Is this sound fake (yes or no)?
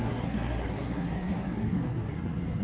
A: yes